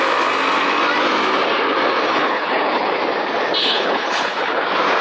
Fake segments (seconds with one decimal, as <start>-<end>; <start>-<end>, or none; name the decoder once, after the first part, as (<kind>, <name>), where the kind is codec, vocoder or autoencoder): 2.0-2.9 (codec, HILCodec); 3.6-4.6